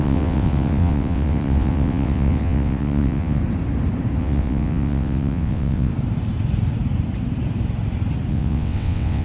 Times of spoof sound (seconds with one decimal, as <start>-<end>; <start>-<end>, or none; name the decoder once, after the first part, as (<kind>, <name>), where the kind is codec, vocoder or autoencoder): 0.0-3.4 (vocoder, WaveNeXt); 4.2-5.9; 8.3-9.2